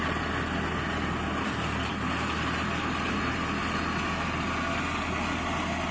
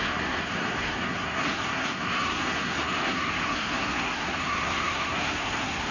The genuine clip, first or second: first